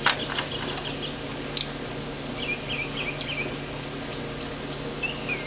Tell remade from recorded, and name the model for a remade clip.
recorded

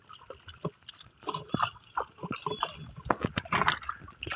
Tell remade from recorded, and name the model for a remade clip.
recorded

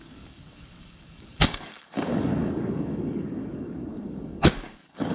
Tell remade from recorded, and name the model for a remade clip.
remade, codec, DAC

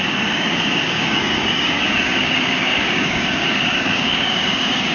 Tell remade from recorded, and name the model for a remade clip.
remade, codec, DAC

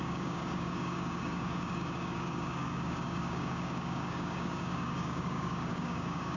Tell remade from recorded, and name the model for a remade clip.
remade, codec, DAC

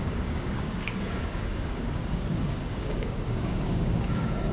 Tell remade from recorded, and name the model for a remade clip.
remade, codec, DAC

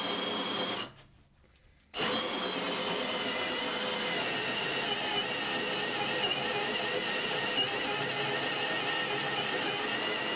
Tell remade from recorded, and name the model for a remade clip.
recorded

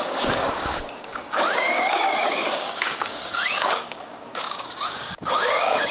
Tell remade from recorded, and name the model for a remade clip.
remade, codec, DAC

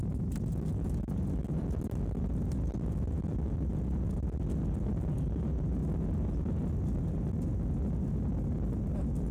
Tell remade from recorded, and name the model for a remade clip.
recorded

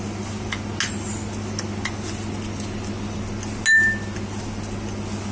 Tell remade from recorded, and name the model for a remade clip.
recorded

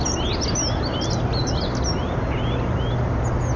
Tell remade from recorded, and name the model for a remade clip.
recorded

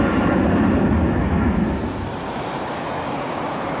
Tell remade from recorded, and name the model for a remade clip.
recorded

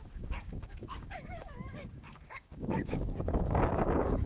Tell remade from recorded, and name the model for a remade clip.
remade, codec, DAC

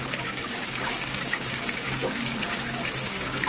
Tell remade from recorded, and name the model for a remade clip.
remade, codec, DAC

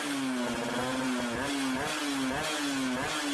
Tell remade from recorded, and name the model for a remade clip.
recorded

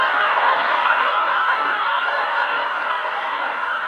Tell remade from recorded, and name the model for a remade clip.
remade, codec, DAC